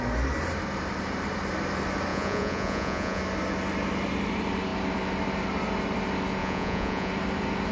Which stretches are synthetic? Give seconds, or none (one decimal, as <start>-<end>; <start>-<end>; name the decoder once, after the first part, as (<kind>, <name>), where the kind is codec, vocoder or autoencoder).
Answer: 2.1-3.2 (vocoder, Vocos); 6.4-7.1

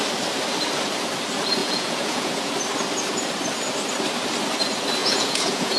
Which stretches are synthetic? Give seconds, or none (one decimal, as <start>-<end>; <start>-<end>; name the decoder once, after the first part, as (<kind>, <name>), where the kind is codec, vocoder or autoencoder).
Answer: 1.6-2.5 (vocoder, Vocos); 5.0-5.8